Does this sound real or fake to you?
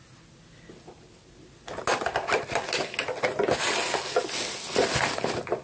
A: real